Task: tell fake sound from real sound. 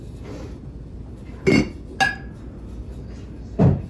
real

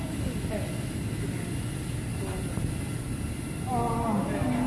real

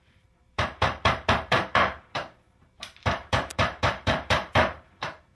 fake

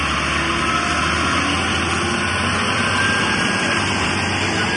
real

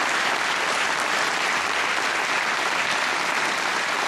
real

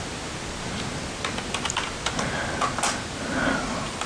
real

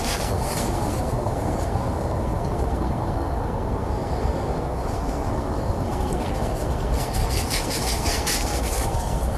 fake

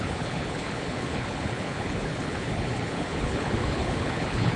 fake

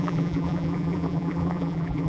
fake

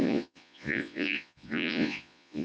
fake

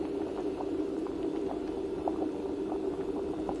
real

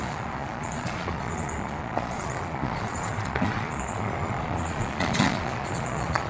fake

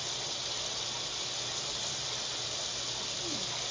real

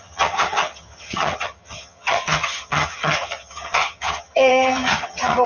fake